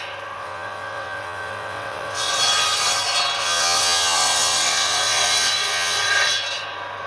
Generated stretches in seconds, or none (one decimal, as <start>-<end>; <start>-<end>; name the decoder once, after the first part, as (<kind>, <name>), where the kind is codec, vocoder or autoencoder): 0.4-2.3 (vocoder, WaveNeXt); 3.4-6.0